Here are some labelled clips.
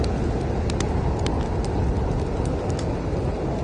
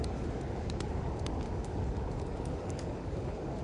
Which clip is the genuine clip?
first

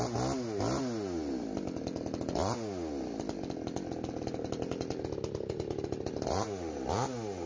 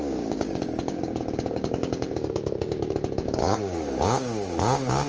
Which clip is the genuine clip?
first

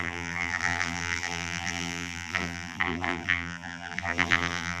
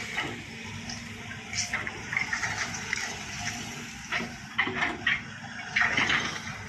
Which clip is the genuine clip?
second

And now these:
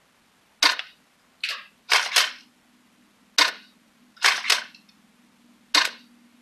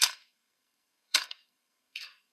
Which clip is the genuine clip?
first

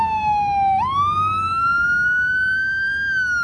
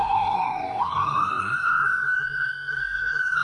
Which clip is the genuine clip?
first